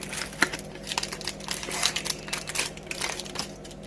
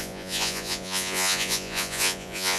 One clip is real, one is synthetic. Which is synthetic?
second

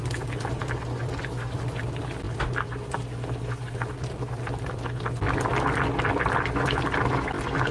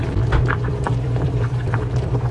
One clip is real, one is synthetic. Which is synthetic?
second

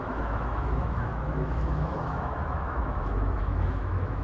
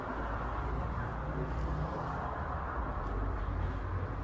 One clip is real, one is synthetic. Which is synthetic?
first